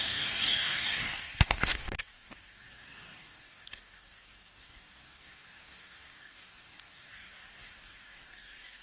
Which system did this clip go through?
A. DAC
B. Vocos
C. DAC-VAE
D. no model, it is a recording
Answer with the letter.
A